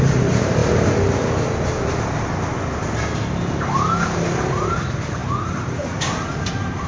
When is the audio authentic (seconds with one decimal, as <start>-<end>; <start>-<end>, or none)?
0.6-4.7